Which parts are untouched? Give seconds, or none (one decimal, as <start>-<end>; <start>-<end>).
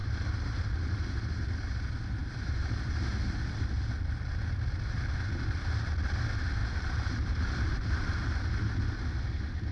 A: 0.6-2.2; 3.1-6.6; 8.5-9.7